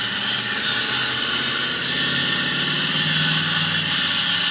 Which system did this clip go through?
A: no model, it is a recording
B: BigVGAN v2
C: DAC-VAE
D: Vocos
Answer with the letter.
A